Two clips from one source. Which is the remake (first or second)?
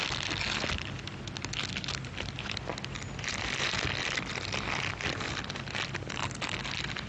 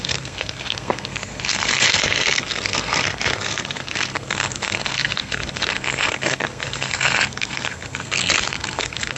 second